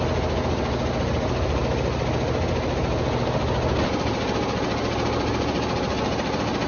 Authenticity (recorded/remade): recorded